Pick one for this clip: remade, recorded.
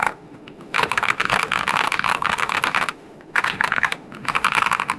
remade